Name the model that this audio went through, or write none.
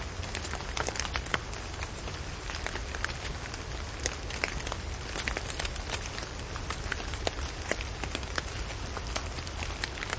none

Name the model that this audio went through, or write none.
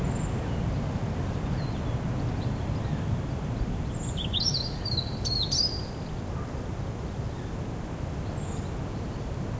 none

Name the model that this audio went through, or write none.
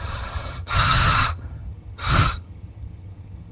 vocoder, HiFi-GAN